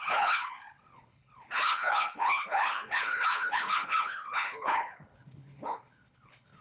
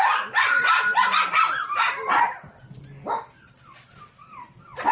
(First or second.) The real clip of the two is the second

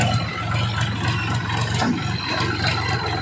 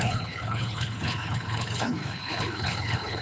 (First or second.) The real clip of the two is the first